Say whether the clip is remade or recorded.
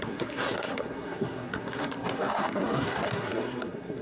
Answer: remade